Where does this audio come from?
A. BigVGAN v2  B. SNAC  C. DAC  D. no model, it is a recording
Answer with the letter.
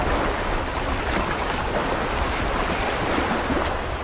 D